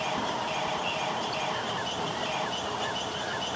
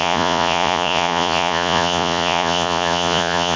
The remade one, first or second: second